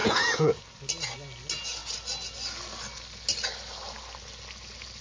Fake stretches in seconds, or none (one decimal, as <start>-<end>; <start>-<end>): 0.0-0.6